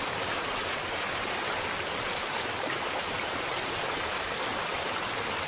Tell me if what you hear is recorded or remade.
recorded